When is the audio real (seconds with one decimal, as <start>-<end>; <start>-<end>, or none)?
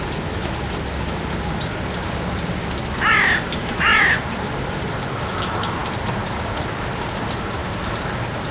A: 0.0-3.6; 4.2-8.5